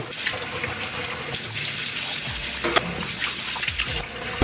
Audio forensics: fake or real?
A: real